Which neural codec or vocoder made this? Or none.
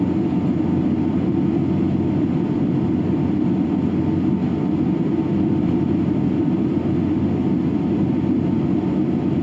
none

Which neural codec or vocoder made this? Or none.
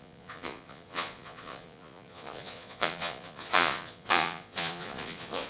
vocoder, Vocos